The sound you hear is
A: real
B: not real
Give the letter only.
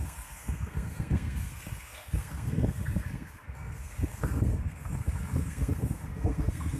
B